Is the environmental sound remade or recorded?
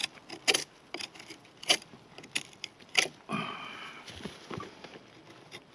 recorded